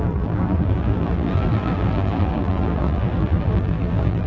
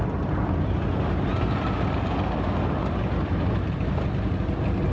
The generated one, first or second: first